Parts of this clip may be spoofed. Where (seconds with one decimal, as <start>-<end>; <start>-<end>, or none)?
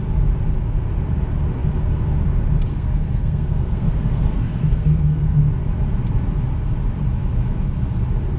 2.7-5.5